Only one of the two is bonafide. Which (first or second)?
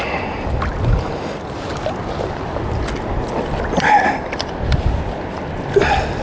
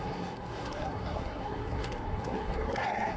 first